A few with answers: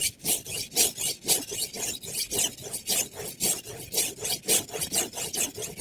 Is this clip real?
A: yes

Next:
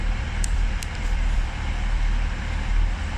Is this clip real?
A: no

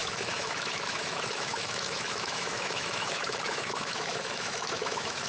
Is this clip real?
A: no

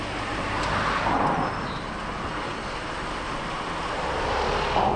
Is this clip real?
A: yes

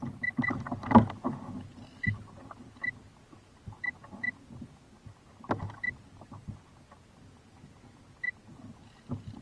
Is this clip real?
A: yes